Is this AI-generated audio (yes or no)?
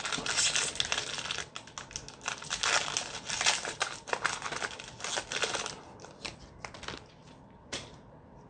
no